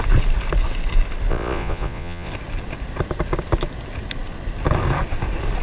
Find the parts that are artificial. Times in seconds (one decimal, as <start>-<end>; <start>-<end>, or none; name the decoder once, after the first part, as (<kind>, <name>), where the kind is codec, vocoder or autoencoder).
1.3-2.3 (vocoder, Vocos)